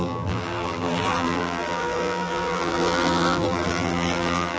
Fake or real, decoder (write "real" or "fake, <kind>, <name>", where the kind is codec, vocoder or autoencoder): fake, vocoder, BigVGAN v2